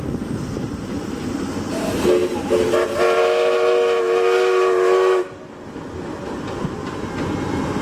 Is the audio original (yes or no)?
yes